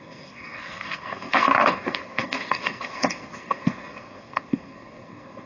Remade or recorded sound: remade